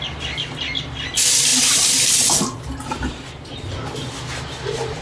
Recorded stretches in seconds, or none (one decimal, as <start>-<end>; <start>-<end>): 0.0-5.0